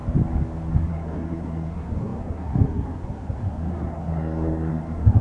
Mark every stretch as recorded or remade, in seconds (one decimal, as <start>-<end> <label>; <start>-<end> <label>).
0.0-0.9 recorded; 0.9-5.2 remade